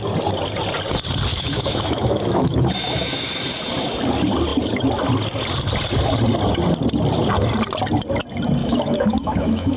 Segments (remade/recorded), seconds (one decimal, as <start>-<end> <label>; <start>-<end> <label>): 0.0-1.3 recorded; 1.3-3.4 remade; 3.4-8.6 recorded; 8.6-9.8 remade